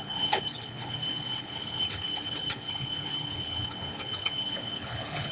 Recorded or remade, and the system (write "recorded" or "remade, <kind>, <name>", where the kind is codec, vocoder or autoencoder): remade, codec, HILCodec